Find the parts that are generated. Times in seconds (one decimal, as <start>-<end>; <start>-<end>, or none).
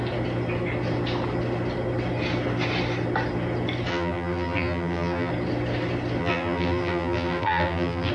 3.9-5.3; 6.2-8.1